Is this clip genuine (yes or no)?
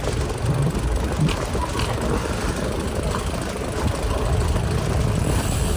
yes